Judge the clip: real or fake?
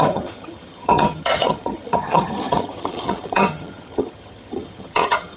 fake